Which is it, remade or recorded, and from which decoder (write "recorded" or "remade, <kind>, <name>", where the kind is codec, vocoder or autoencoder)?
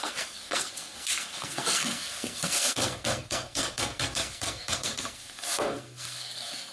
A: remade, codec, SNAC